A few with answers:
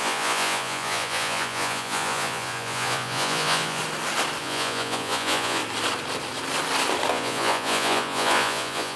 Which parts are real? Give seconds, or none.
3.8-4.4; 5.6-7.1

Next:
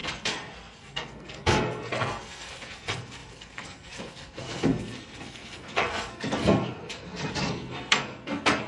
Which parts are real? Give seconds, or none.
none

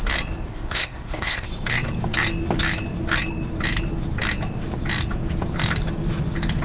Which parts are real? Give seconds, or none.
0.0-0.5; 1.5-6.6